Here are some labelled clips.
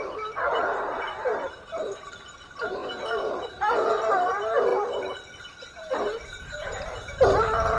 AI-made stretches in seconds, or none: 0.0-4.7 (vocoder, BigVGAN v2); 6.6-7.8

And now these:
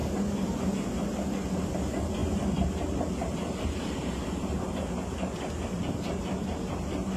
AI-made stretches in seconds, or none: 1.0-7.2 (vocoder, BigVGAN v2)

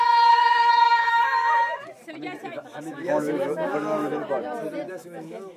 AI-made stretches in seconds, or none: 0.0-1.8 (autoencoder, DAC-VAE); 2.4-4.2; 4.9-5.6

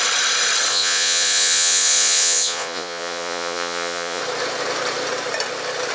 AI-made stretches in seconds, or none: 0.7-4.2 (vocoder, Vocos)

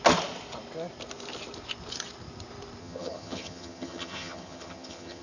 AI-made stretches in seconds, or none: 2.8-5.2 (vocoder, HiFi-GAN)